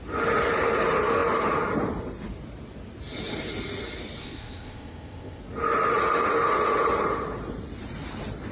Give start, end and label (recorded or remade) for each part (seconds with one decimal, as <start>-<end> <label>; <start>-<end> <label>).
0.0-4.2 recorded; 4.2-5.4 remade; 5.4-8.5 recorded

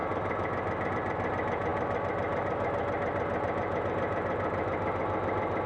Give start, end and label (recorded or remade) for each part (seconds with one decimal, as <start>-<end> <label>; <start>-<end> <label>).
0.0-5.7 recorded